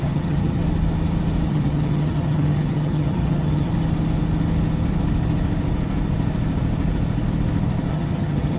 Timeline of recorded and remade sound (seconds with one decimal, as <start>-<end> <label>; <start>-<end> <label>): 0.0-0.6 remade; 0.6-1.5 recorded; 1.5-3.7 remade; 3.7-7.9 recorded; 7.9-8.6 remade